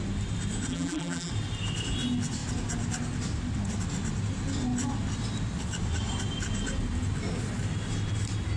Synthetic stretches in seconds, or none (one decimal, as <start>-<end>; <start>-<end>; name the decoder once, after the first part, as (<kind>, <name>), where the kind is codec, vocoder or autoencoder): 0.7-1.3 (vocoder, BigVGAN v2)